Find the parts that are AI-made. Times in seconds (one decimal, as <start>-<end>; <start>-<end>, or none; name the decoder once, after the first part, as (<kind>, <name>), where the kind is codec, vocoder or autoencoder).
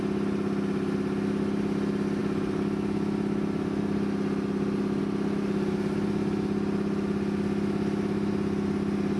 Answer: none